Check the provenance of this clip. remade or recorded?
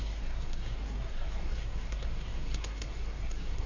remade